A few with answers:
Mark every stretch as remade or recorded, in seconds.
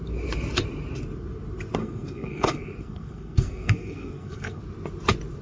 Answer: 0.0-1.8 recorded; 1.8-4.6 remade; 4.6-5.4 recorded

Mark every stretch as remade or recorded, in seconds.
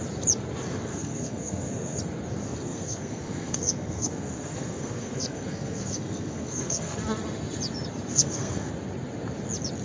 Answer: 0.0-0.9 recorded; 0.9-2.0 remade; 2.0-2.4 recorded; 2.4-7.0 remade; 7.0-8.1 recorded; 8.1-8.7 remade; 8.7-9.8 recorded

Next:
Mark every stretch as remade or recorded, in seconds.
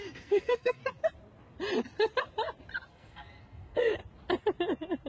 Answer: 0.0-0.8 remade; 0.8-2.9 recorded; 2.9-4.0 remade; 4.0-5.1 recorded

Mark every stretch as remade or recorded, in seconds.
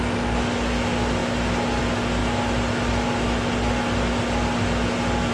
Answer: 0.0-5.3 recorded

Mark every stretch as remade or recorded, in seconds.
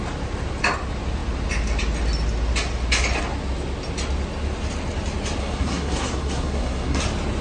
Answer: 0.0-5.4 recorded; 5.4-7.0 remade; 7.0-7.4 recorded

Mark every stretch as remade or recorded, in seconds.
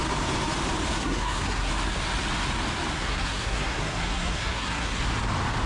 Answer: 0.0-0.9 recorded; 0.9-1.7 remade; 1.7-2.9 recorded; 2.9-5.0 remade; 5.0-5.7 recorded